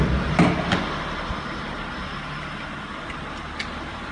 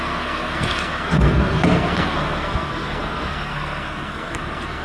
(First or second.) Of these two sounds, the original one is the first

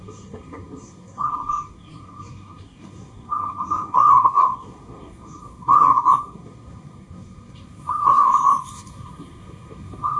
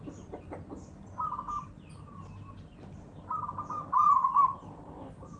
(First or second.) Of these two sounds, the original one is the second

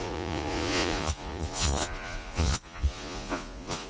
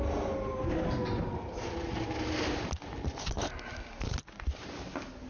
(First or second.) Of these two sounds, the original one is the second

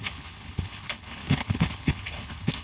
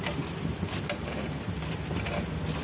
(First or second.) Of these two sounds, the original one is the second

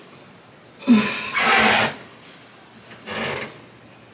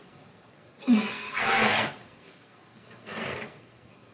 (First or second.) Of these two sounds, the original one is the first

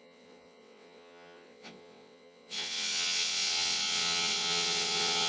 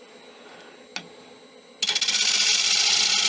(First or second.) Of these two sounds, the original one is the second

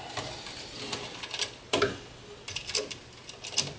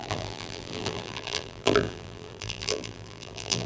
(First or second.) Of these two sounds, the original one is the first